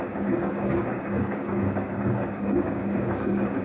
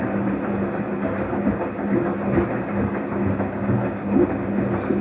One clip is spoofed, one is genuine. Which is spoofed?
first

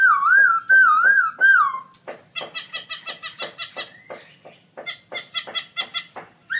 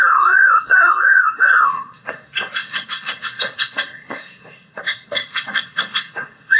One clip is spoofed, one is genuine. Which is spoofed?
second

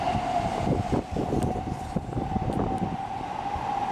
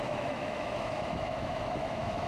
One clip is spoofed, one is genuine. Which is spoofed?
second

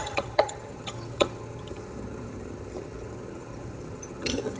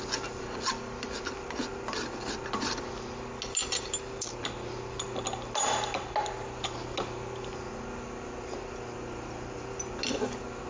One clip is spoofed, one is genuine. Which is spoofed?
first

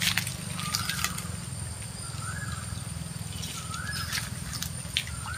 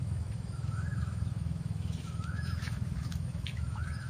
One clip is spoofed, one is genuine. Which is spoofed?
second